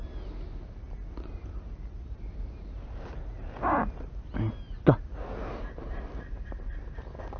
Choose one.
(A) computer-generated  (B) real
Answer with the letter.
B